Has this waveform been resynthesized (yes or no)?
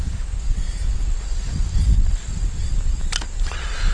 no